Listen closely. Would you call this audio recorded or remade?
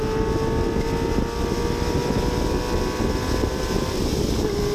recorded